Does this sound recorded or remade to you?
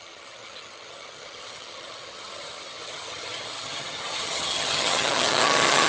remade